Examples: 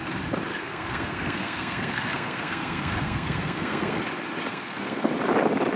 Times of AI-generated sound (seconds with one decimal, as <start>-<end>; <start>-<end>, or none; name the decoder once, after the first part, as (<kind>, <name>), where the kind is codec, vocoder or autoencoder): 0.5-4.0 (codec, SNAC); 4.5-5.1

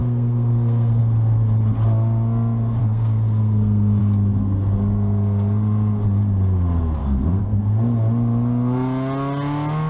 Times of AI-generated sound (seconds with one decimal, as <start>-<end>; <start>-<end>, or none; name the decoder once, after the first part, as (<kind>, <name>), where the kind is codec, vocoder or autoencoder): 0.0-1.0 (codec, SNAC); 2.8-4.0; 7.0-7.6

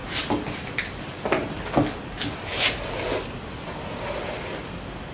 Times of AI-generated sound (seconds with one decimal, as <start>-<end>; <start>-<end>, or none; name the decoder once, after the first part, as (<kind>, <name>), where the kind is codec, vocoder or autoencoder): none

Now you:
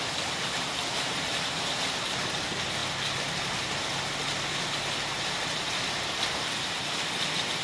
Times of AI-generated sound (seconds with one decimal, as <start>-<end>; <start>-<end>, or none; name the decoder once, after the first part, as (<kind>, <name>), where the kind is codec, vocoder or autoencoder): none